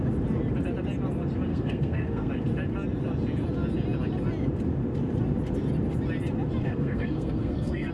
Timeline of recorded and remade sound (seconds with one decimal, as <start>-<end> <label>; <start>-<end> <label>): 0.0-1.5 recorded; 1.5-2.3 remade; 2.3-6.6 recorded; 6.6-7.9 remade

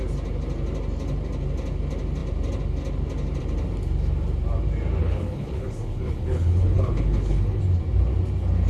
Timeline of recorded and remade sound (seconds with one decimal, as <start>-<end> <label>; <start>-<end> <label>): 0.0-5.0 recorded; 5.0-7.6 remade; 7.6-8.7 recorded

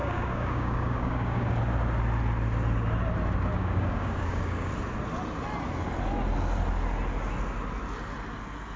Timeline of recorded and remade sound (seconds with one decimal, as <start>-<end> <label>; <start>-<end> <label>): 0.0-1.6 remade; 1.6-3.5 recorded; 3.5-4.7 remade; 4.7-8.8 recorded

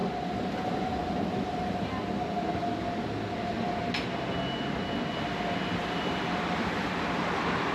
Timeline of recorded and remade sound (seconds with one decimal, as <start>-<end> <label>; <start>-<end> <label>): 0.0-1.0 recorded; 1.0-2.1 remade; 2.1-5.8 recorded; 5.8-6.9 remade; 6.9-7.7 recorded

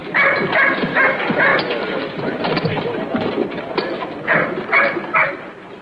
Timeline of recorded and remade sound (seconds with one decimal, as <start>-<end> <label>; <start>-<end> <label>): 0.0-1.5 recorded; 1.5-3.6 remade; 3.6-5.8 recorded

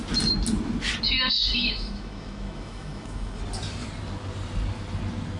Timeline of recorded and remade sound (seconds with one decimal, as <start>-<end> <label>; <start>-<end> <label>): 0.0-1.4 recorded; 1.4-3.4 remade; 3.4-5.4 recorded

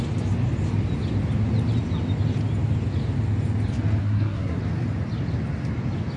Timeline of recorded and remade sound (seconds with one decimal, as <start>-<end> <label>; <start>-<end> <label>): 0.0-4.0 recorded; 4.0-4.6 remade; 4.6-6.2 recorded